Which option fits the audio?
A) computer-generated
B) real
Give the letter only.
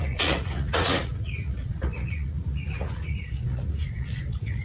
A